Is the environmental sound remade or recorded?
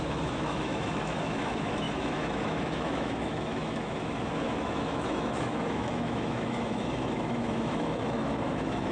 remade